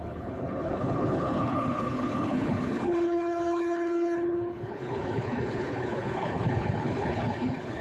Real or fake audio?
fake